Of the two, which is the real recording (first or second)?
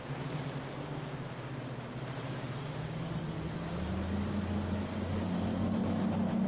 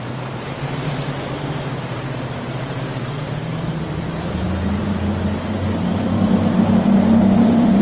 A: first